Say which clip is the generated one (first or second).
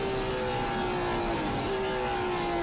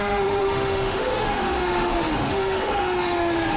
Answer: second